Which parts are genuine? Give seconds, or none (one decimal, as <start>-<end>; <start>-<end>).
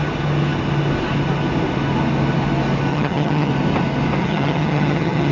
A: 0.0-2.9; 3.5-4.2